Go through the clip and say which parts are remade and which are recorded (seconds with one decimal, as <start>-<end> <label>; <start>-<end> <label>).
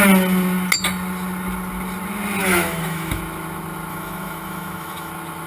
0.0-2.4 recorded; 2.4-3.2 remade; 3.2-3.9 recorded; 3.9-5.1 remade; 5.1-5.5 recorded